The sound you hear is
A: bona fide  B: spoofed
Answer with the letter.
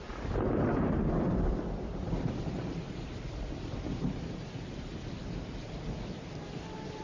B